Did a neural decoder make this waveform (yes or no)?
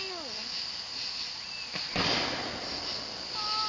no